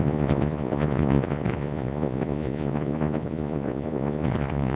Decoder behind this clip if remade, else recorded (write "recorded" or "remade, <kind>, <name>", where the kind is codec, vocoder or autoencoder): remade, vocoder, Vocos